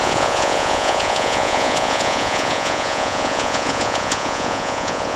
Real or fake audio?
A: fake